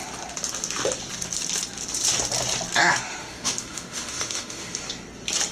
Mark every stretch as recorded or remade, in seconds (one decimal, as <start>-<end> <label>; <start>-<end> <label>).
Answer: 0.0-3.2 recorded; 3.2-4.8 remade; 4.8-5.5 recorded